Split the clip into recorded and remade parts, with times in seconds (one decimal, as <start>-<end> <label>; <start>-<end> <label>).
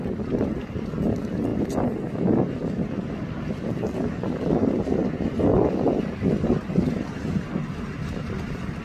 0.0-8.8 recorded